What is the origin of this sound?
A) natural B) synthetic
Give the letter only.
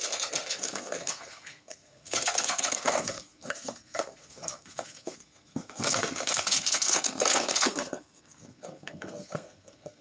B